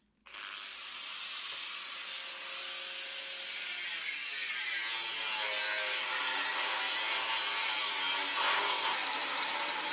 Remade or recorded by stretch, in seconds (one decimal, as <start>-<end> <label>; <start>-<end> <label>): 0.0-9.2 recorded; 9.2-9.9 remade